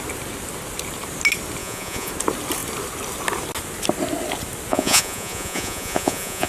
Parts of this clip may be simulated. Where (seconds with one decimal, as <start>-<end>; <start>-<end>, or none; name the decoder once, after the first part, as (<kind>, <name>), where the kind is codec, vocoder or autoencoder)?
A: 1.6-2.1 (vocoder, Vocos); 4.7-6.5